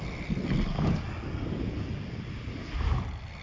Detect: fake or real real